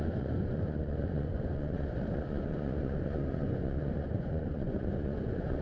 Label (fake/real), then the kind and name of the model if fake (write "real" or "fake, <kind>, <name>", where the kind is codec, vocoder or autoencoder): fake, vocoder, Vocos